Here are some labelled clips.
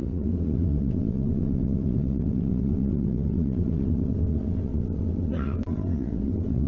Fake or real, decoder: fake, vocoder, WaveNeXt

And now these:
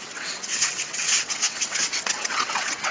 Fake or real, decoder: fake, vocoder, WaveNeXt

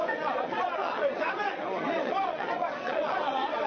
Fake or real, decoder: fake, vocoder, WaveNeXt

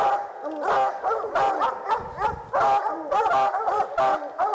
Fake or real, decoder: real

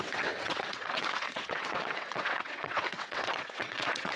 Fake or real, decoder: fake, vocoder, WaveNeXt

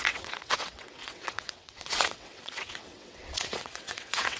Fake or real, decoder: fake, vocoder, WaveNeXt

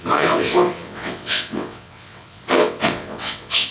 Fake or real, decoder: fake, vocoder, WaveNeXt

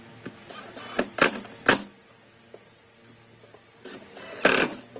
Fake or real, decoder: real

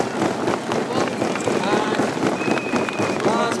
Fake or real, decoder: real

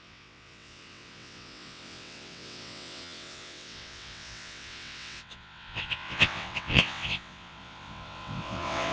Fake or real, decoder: fake, vocoder, WaveNeXt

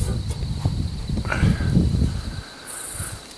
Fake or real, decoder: real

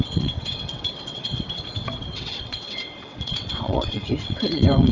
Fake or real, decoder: fake, vocoder, WaveNeXt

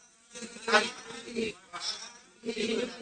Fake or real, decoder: real